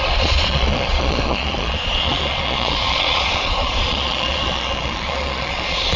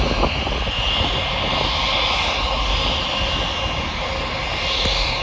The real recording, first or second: second